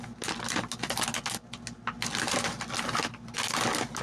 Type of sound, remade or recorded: recorded